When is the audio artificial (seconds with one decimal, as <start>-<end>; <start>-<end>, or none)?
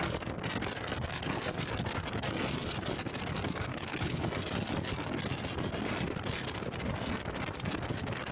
3.7-4.2